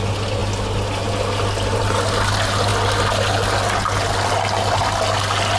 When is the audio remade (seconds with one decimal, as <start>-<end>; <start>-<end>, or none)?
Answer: none